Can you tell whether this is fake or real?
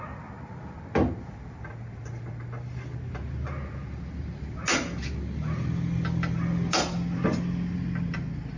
real